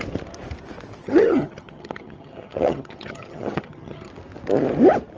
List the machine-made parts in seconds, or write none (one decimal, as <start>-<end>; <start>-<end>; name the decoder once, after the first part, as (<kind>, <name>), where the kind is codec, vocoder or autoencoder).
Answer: 1.0-4.1 (vocoder, HiFi-GAN)